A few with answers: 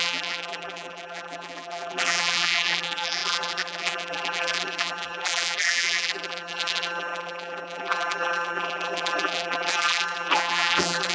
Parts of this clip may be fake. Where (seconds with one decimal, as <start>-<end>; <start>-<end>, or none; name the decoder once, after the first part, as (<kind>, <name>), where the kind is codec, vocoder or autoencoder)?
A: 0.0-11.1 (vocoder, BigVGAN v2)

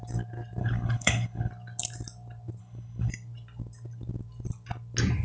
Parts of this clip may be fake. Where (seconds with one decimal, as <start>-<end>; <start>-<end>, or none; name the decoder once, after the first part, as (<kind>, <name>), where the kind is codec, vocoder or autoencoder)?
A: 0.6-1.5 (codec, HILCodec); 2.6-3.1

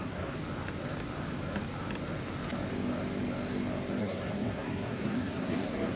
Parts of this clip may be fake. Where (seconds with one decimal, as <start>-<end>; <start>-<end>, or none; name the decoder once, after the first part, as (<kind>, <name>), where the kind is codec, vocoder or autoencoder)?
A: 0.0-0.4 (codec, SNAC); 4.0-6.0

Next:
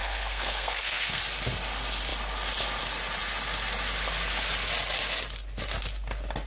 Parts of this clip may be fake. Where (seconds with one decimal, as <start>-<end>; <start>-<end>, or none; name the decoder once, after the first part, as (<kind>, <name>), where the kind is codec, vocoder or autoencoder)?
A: 0.0-1.2 (codec, SNAC)

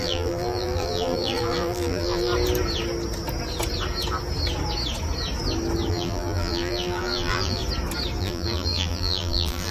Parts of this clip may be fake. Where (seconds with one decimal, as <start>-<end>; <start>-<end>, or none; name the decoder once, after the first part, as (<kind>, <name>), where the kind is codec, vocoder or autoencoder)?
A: 0.0-2.3 (vocoder, BigVGAN v2); 5.9-7.6; 8.2-9.7

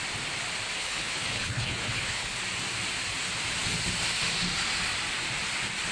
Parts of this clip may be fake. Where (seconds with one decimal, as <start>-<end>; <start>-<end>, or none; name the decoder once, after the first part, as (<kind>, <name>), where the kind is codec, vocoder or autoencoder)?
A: 0.8-2.4 (codec, HILCodec)